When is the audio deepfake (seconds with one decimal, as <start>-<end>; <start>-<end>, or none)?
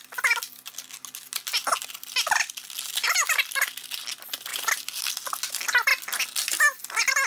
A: 4.5-5.1